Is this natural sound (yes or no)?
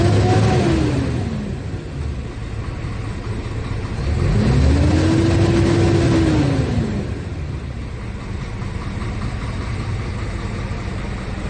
yes